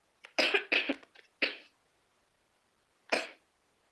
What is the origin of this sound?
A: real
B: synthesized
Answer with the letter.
A